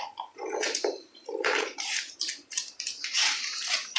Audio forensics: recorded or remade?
remade